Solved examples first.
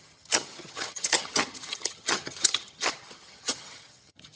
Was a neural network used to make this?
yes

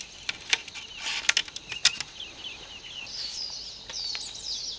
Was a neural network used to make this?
no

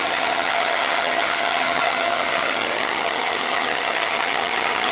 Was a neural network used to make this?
yes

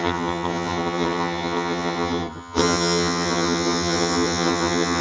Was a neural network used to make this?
yes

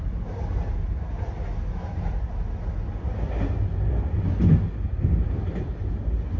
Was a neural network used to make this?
no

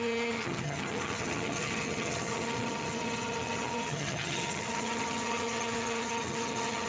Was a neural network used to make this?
yes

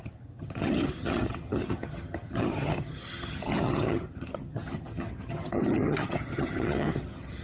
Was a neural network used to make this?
yes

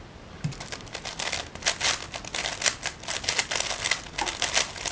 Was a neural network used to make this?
no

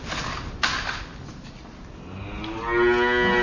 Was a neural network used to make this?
no